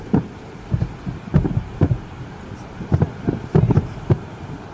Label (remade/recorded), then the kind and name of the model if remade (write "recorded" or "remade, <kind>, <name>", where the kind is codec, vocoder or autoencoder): recorded